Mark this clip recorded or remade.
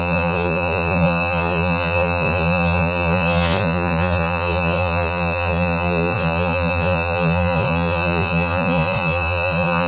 remade